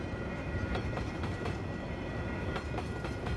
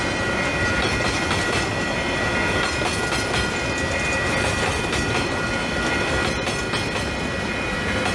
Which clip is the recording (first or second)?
second